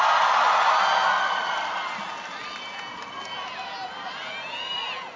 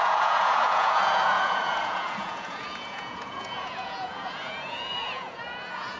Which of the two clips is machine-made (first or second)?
second